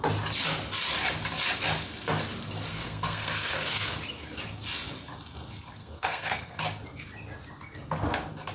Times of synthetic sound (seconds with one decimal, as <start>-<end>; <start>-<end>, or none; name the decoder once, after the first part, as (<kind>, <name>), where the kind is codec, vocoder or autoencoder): 2.7-4.0 (codec, SNAC); 5.8-6.6